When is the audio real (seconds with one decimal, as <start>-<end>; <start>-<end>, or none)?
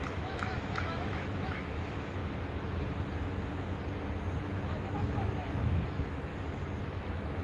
2.2-4.4; 6.3-6.8